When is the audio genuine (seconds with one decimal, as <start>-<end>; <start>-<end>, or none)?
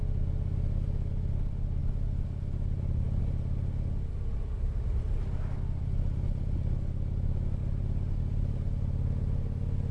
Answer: 0.0-9.9